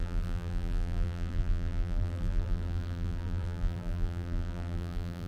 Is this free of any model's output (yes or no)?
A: no